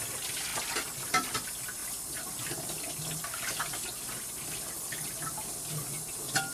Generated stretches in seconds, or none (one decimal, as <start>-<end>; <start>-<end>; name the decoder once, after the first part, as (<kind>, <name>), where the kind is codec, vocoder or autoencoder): none